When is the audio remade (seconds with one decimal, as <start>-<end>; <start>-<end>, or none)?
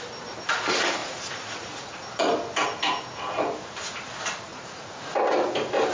1.0-2.3; 4.5-5.1